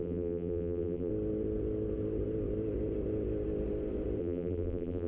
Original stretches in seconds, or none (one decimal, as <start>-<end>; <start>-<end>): 1.1-4.2